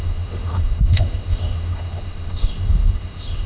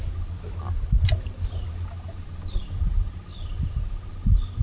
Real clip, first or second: second